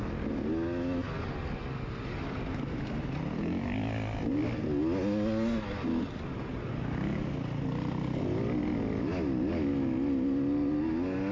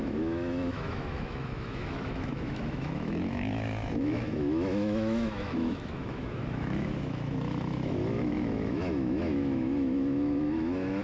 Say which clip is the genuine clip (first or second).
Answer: first